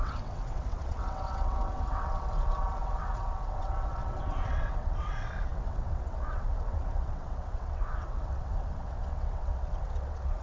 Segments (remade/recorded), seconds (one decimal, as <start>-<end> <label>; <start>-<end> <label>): 0.0-10.4 remade